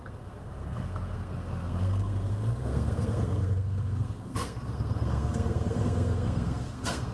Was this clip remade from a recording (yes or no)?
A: yes